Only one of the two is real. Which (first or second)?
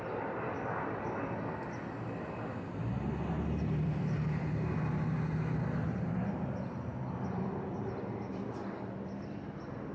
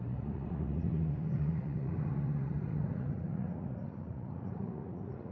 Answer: first